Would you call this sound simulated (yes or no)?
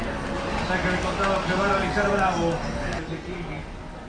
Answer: no